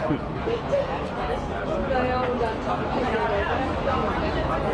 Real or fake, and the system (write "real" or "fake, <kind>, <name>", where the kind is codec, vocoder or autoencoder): real